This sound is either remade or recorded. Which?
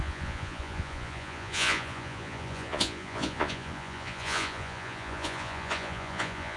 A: remade